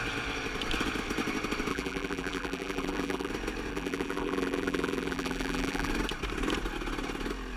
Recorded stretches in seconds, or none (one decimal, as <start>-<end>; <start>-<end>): 0.0-1.7; 3.3-3.7; 5.9-7.6